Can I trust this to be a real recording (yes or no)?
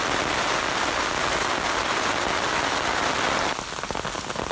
yes